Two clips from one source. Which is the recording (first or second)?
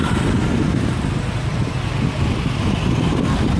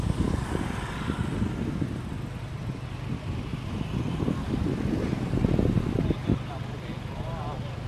second